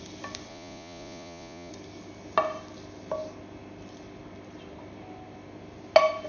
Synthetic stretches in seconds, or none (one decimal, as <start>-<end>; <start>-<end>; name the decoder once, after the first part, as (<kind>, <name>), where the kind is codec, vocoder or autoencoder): 0.5-1.7 (vocoder, Vocos)